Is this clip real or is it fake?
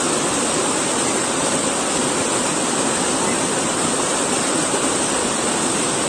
real